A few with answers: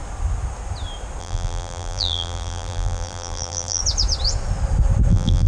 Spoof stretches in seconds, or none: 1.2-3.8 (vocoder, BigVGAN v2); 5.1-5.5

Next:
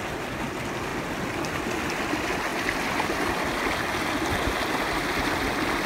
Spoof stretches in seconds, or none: 2.5-3.3 (vocoder, BigVGAN v2)

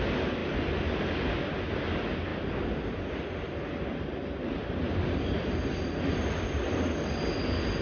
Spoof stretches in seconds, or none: none